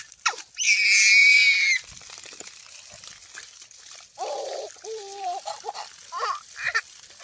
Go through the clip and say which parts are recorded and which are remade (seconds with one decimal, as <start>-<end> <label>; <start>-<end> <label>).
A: 0.0-1.2 recorded; 1.2-5.5 remade; 5.5-7.2 recorded